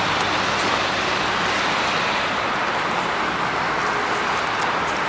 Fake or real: real